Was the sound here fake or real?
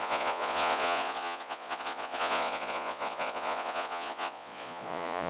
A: fake